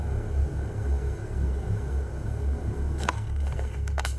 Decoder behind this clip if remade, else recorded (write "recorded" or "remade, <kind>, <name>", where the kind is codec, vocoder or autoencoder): remade, codec, SNAC